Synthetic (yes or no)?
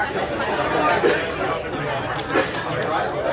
no